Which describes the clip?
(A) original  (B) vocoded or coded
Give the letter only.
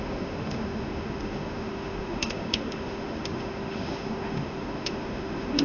B